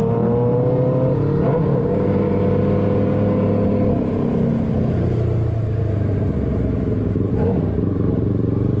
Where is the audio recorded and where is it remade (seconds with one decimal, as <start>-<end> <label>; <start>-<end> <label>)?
0.0-1.5 recorded; 1.5-2.3 remade; 2.3-8.8 recorded